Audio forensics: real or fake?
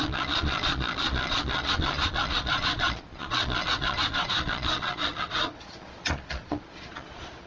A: fake